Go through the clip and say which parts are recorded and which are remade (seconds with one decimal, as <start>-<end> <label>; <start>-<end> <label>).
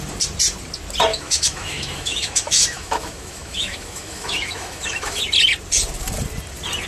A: 0.0-1.1 recorded; 1.1-5.2 remade; 5.2-6.9 recorded